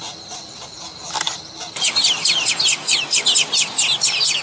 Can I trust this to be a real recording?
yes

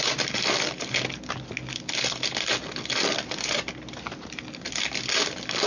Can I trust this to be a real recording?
yes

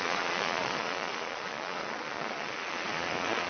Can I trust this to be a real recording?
no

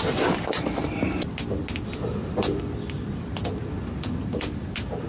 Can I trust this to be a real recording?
yes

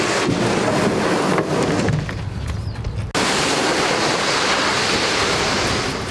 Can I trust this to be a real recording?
yes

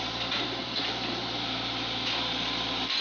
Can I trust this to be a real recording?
yes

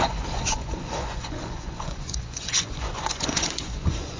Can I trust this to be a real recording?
no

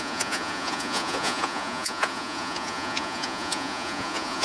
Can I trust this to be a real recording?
no